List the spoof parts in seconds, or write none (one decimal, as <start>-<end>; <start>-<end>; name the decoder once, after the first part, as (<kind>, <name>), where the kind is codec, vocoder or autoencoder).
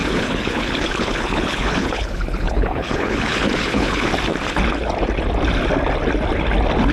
0.0-4.1 (codec, HILCodec)